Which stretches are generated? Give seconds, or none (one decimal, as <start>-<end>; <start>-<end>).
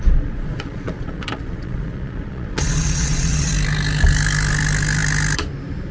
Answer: 0.0-3.5